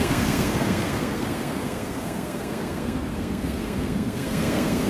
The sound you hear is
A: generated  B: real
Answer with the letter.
A